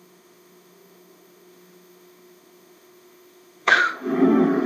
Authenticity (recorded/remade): remade